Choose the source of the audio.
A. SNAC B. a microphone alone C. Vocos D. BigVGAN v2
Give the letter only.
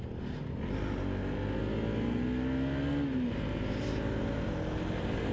B